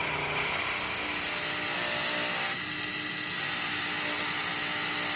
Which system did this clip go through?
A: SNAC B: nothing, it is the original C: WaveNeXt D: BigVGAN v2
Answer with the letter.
B